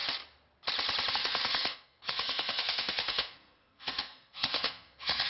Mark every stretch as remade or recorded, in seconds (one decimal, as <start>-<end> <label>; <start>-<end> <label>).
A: 0.0-1.1 recorded; 1.1-5.3 remade